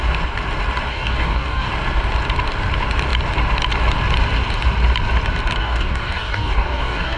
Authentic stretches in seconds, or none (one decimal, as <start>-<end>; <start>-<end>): 0.0-0.9; 1.7-5.6